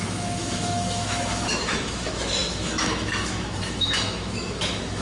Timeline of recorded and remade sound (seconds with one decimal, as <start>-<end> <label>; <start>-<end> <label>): 0.0-5.0 remade